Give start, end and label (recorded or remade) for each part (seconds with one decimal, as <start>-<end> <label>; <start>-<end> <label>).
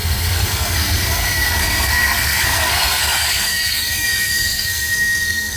0.0-5.6 remade